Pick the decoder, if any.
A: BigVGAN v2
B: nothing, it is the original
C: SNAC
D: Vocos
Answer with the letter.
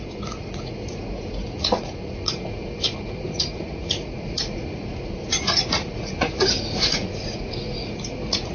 D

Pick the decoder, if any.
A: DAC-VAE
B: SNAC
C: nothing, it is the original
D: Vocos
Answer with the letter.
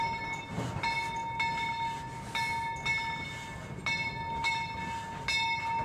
C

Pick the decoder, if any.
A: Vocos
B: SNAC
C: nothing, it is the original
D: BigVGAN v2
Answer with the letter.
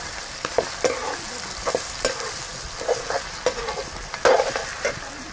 C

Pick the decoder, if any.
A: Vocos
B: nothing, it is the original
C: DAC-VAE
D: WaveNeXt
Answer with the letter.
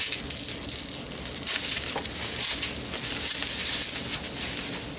B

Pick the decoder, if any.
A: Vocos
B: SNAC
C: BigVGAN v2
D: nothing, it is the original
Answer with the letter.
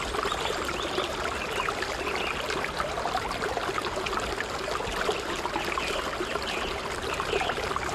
D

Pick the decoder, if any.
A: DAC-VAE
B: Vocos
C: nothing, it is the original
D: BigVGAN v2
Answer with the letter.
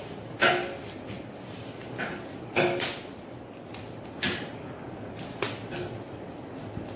C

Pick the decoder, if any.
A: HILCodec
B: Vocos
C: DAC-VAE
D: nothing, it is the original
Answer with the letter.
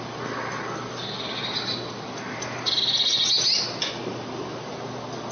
D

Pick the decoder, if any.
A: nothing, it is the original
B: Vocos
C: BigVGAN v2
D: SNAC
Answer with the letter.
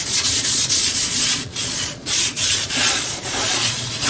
B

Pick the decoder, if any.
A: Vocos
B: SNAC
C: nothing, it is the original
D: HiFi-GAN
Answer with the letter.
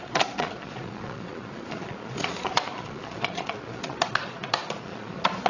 A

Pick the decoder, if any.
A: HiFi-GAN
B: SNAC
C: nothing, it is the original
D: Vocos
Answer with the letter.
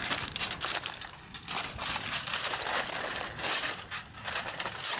C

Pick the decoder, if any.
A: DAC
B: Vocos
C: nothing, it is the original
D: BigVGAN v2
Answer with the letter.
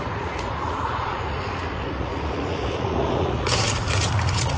B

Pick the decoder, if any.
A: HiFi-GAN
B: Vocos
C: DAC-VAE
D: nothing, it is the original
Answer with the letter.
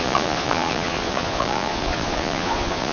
B